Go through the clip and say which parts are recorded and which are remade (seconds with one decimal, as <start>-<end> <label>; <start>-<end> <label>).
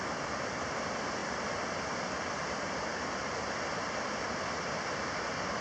0.0-1.2 recorded; 1.2-2.0 remade; 2.0-5.6 recorded